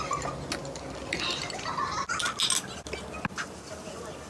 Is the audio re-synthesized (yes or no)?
no